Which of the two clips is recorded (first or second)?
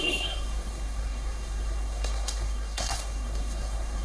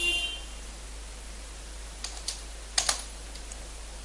second